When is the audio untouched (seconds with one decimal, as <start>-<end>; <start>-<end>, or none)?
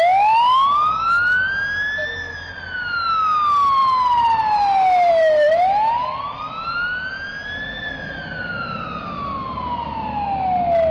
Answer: 0.0-10.9